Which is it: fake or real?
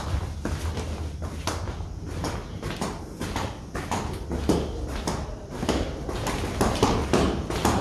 real